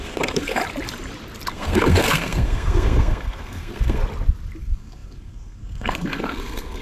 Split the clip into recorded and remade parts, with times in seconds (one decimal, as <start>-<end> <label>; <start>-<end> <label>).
0.0-0.6 remade; 0.6-1.5 recorded; 1.5-4.0 remade; 4.0-4.6 recorded; 4.6-6.8 remade